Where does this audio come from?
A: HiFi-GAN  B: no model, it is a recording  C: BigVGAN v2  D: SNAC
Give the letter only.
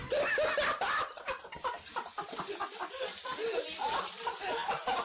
B